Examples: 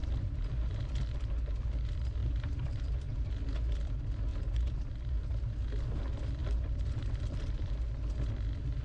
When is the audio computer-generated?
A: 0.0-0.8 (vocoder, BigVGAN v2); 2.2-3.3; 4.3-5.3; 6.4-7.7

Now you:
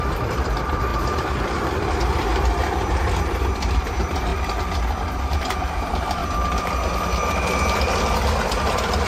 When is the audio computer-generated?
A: 0.0-4.3 (vocoder, BigVGAN v2); 5.2-6.2; 8.6-9.1

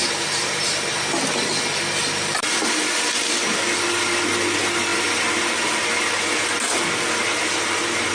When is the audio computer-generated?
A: none

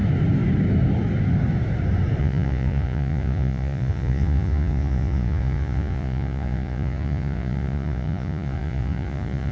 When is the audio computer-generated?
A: 2.2-9.5 (vocoder, Vocos)

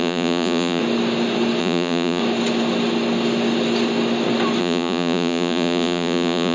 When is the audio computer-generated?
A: 0.0-0.8 (vocoder, Vocos); 1.6-2.2; 4.6-6.5

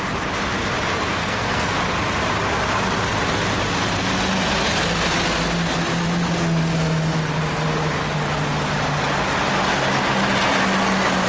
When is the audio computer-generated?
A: 1.2-1.8 (codec, SNAC)